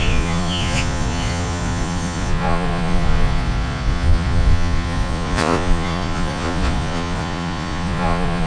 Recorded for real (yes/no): no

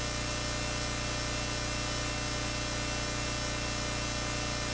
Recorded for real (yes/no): yes